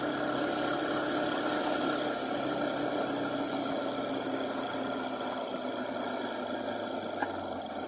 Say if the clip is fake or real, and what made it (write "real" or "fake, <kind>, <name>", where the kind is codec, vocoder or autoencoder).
real